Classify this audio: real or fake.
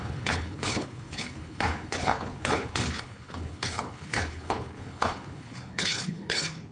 fake